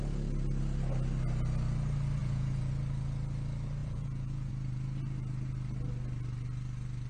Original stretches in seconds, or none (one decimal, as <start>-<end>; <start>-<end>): 0.0-2.2; 2.7-3.8; 4.5-7.1